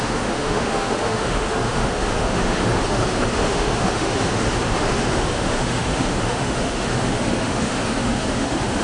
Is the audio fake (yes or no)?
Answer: yes